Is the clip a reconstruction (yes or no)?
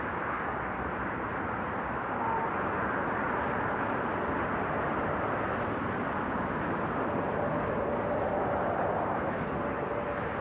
no